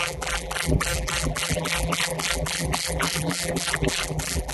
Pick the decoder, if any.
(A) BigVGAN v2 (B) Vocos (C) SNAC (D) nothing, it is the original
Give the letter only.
A